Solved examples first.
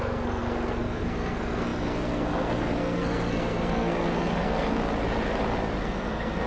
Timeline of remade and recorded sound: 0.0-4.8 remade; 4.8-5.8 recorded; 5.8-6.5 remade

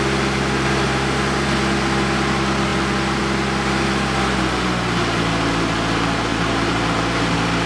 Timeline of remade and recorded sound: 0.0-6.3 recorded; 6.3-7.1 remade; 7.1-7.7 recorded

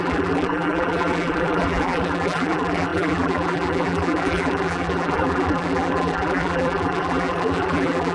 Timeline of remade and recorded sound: 0.0-8.1 remade

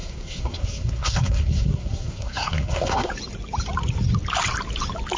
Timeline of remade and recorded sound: 0.0-3.1 remade; 3.1-5.2 recorded

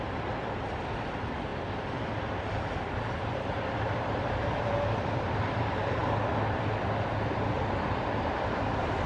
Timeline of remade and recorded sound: 0.0-6.0 remade; 6.0-7.4 recorded; 7.4-9.1 remade

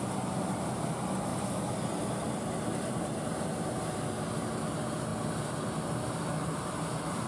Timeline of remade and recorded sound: 0.0-7.3 recorded

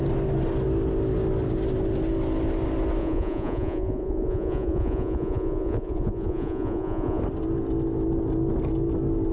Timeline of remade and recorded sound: 0.0-3.0 recorded; 3.0-7.2 remade; 7.2-9.3 recorded